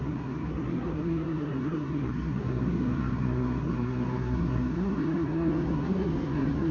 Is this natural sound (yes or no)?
no